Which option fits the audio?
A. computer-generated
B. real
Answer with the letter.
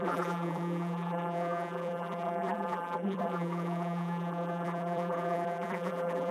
A